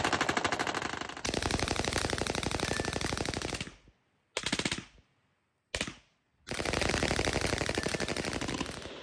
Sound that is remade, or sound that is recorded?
recorded